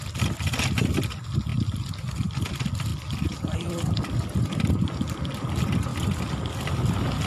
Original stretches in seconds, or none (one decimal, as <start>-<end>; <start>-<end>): 0.0-7.3